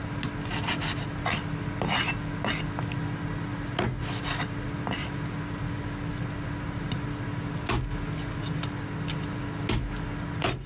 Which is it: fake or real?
real